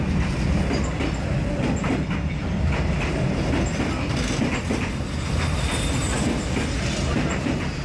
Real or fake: real